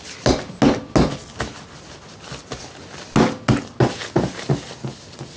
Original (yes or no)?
yes